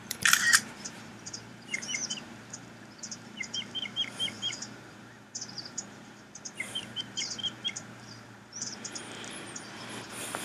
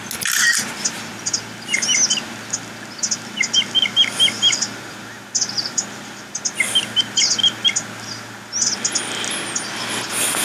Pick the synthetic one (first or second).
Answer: first